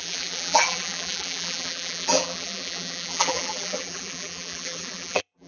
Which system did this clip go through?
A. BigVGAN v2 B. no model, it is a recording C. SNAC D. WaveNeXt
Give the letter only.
A